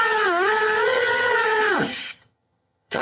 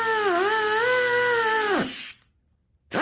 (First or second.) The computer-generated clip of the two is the first